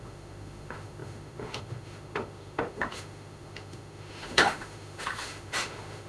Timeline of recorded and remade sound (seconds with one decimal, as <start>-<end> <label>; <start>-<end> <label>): 0.0-6.1 remade